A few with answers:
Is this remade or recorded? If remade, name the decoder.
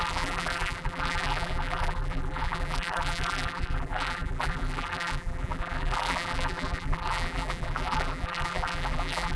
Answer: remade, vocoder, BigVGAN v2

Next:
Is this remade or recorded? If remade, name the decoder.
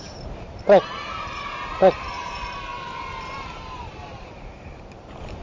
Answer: remade, vocoder, BigVGAN v2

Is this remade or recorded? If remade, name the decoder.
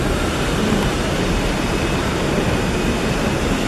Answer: remade, vocoder, BigVGAN v2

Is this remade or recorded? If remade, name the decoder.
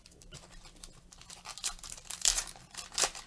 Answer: remade, vocoder, BigVGAN v2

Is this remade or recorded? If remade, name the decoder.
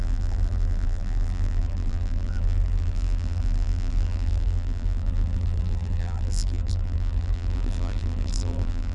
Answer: remade, vocoder, BigVGAN v2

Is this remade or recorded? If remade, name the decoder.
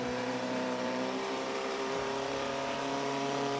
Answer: remade, vocoder, BigVGAN v2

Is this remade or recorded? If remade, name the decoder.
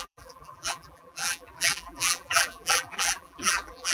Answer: remade, vocoder, BigVGAN v2